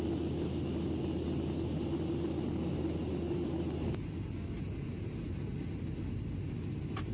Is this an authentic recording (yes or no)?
yes